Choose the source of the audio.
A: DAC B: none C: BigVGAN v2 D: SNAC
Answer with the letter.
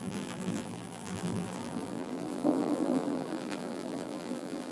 C